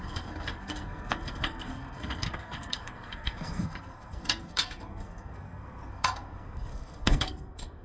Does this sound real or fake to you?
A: fake